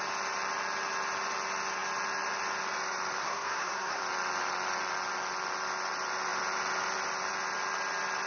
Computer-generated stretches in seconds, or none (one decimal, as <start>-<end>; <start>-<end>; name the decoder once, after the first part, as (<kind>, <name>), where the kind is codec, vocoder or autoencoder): 3.2-4.0 (codec, SNAC)